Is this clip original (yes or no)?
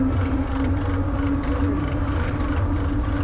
yes